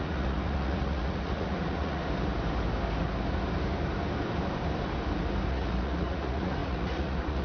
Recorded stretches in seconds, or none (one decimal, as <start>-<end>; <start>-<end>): 2.0-5.5